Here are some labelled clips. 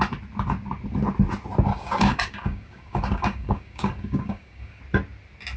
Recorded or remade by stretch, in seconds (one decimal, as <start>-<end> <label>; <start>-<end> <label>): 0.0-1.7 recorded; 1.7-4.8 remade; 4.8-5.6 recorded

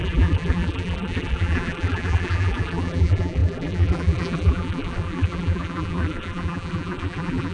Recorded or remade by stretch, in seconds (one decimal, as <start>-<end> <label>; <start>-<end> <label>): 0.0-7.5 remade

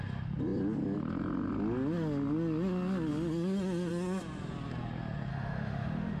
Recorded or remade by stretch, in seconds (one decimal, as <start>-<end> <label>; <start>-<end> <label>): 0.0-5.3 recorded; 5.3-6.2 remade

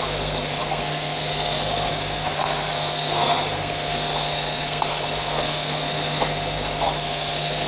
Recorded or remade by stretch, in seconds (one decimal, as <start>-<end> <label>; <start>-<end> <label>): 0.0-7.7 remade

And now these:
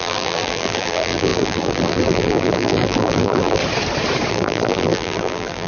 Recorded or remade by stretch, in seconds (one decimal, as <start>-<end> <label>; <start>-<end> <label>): 0.0-3.6 remade; 3.6-4.3 recorded; 4.3-5.7 remade

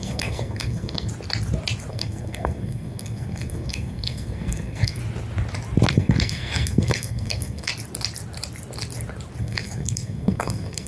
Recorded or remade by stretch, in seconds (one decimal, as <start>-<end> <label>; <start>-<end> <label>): 0.0-1.1 remade; 1.1-1.9 recorded; 1.9-5.0 remade; 5.0-5.9 recorded; 5.9-7.7 remade; 7.7-9.4 recorded; 9.4-10.9 remade

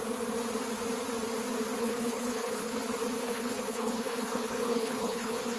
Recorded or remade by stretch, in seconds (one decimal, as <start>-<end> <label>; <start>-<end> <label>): 0.0-1.8 recorded; 1.8-2.8 remade; 2.8-3.2 recorded; 3.2-5.6 remade